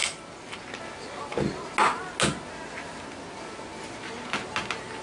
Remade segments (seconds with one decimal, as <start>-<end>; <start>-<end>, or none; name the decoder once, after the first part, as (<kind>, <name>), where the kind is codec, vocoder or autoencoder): none